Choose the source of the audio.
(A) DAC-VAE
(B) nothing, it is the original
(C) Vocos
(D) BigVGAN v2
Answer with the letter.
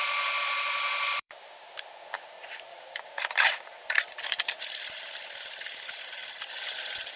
D